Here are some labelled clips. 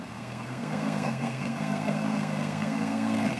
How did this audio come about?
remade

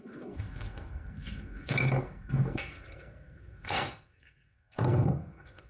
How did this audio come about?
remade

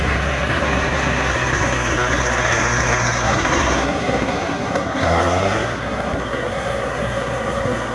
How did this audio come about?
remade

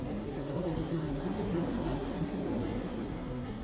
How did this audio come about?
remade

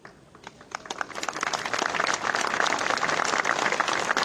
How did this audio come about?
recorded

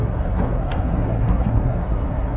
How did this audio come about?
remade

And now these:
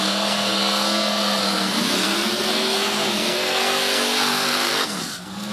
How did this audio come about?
remade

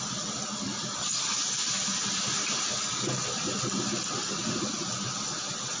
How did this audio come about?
recorded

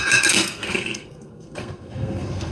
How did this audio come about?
remade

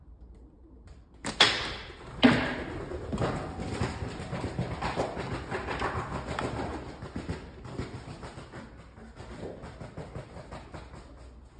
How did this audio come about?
recorded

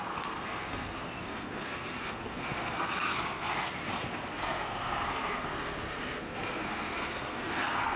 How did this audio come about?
remade